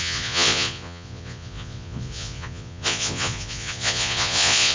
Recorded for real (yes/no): no